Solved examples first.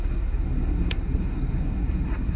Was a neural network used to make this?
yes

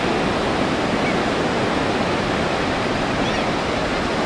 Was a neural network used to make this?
no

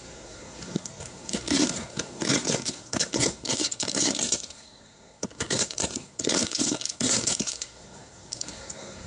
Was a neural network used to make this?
yes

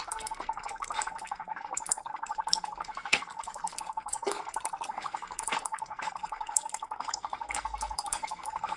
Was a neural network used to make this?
yes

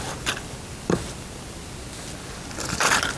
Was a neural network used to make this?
no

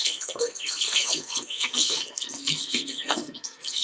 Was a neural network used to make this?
yes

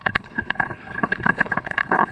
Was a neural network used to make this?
yes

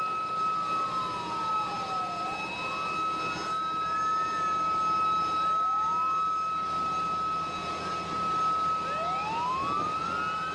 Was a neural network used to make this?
no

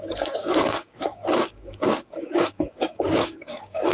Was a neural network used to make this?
yes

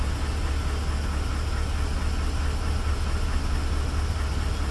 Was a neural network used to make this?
no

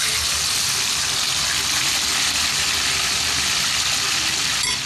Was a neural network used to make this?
no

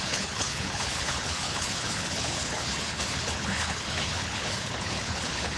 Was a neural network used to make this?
yes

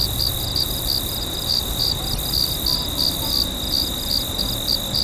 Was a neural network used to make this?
no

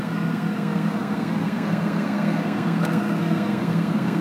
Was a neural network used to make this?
yes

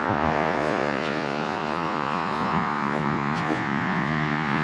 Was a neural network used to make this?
yes